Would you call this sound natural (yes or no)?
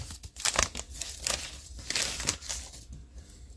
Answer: yes